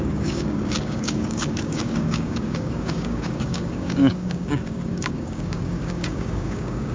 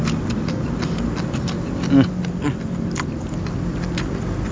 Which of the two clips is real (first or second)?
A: second